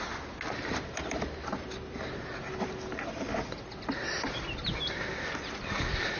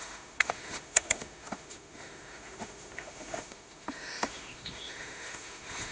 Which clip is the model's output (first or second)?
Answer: second